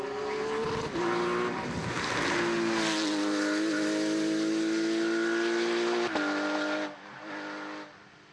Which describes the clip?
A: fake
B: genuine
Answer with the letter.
B